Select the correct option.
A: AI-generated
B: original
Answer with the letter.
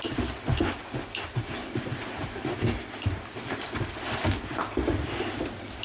A